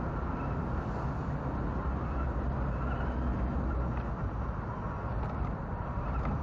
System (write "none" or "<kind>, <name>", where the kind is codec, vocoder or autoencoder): none